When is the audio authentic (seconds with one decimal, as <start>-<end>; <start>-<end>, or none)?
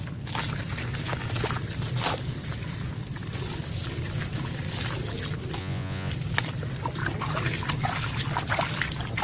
0.0-5.6; 6.1-9.2